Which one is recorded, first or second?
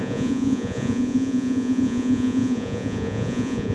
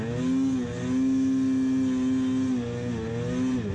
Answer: second